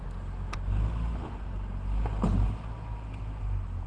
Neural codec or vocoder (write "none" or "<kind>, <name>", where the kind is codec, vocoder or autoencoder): none